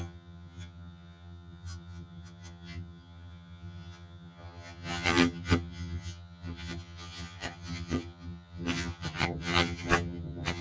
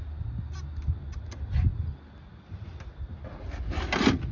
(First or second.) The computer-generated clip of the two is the first